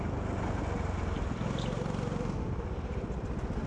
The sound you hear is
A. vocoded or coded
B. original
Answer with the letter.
B